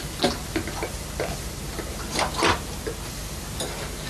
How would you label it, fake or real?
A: real